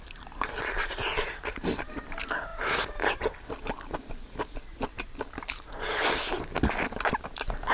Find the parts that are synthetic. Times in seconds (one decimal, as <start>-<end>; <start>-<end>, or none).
none